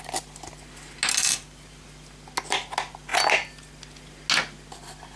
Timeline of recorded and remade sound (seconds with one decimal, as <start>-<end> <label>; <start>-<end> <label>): 0.0-5.2 recorded